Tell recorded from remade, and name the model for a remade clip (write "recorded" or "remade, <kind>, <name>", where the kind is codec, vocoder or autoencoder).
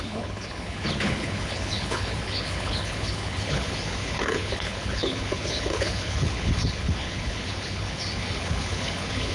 remade, codec, HILCodec